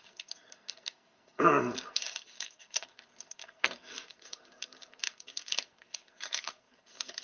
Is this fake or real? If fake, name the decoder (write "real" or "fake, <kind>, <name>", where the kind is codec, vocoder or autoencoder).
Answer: fake, codec, SNAC